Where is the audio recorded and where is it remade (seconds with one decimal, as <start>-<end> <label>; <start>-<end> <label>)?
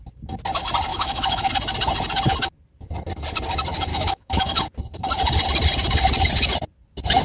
0.0-0.9 recorded; 0.9-1.5 remade; 1.5-3.9 recorded; 3.9-4.6 remade; 4.6-7.2 recorded